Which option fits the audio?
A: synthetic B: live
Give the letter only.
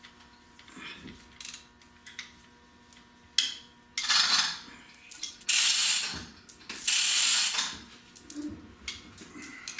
B